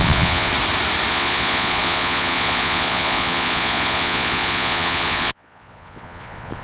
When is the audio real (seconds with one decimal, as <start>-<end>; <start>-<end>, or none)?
0.5-1.1